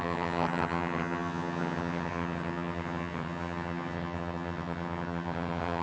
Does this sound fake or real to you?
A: fake